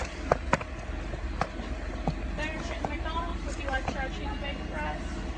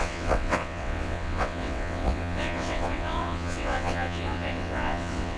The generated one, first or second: second